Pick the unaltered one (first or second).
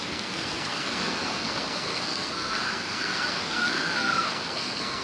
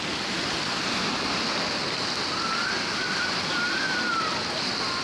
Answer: second